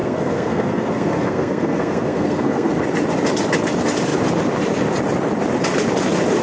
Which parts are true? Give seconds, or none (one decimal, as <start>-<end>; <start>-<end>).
2.7-6.4

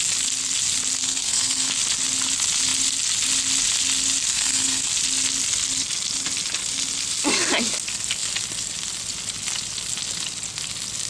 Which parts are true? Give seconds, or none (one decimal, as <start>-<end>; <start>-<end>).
0.0-1.0; 1.7-4.3; 4.9-11.1